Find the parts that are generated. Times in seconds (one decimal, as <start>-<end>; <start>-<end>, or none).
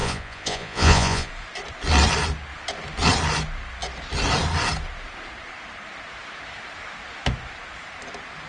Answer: 0.0-1.3